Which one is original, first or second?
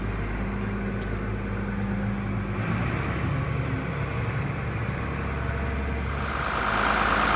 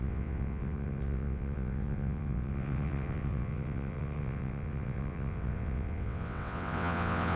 first